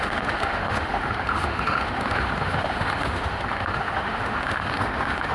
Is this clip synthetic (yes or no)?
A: yes